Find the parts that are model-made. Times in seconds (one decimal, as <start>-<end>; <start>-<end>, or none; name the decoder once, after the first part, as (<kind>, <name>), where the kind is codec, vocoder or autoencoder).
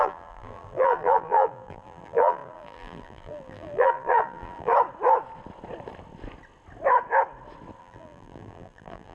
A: 0.0-4.7 (vocoder, BigVGAN v2); 7.8-9.1